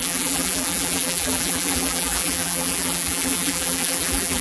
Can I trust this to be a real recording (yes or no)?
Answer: no